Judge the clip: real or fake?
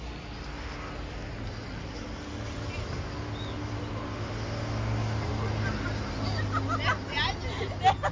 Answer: real